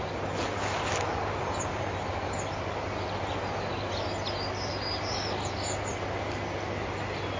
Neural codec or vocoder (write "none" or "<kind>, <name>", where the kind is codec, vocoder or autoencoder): none